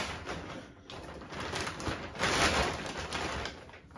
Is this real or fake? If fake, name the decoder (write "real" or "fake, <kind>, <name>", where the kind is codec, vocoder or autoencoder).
real